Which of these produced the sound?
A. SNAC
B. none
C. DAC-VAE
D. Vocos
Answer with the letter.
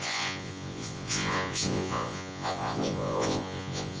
D